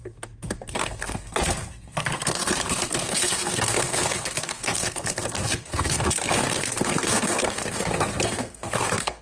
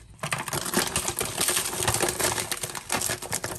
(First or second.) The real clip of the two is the second